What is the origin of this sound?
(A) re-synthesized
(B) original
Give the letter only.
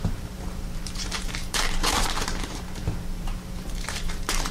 A